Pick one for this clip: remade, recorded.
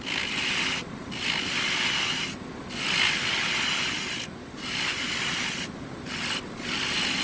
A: recorded